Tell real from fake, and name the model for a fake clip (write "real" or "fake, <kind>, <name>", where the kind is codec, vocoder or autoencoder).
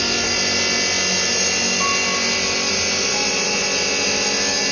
real